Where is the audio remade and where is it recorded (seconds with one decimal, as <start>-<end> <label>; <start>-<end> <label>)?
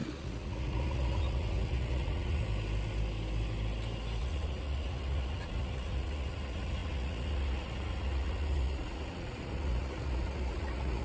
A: 0.0-2.4 remade; 2.4-4.2 recorded; 4.2-11.0 remade